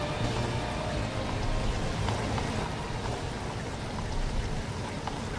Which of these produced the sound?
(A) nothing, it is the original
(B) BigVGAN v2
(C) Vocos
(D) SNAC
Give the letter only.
A